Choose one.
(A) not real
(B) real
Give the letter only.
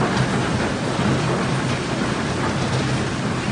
B